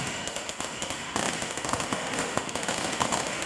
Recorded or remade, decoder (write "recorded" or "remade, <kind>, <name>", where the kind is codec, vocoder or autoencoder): remade, autoencoder, DAC-VAE